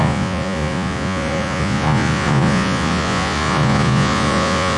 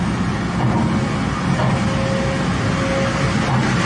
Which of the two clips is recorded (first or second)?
second